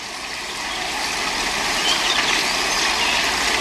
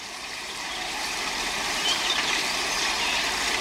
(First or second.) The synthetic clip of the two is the second